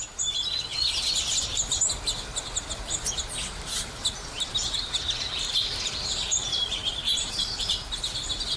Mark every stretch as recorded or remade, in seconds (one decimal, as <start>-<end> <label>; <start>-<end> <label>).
0.0-0.7 remade; 0.7-5.5 recorded; 5.5-6.8 remade; 6.8-7.3 recorded; 7.3-8.6 remade